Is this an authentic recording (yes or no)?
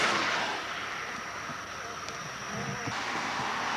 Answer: yes